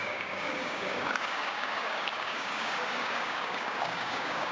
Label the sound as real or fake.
fake